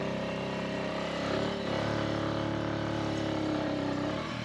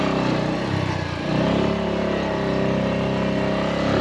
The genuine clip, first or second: second